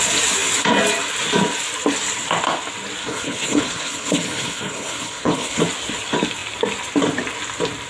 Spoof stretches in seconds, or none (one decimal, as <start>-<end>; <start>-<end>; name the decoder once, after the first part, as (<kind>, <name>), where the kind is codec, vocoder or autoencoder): 3.0-5.6 (codec, HILCodec)